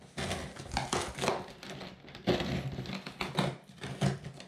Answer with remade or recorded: recorded